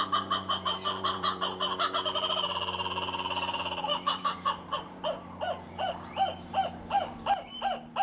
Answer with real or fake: fake